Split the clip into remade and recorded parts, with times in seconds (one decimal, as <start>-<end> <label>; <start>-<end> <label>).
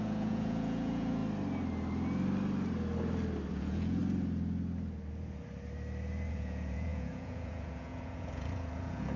0.0-1.2 remade; 1.2-3.5 recorded; 3.5-4.0 remade; 4.0-6.3 recorded; 6.3-9.2 remade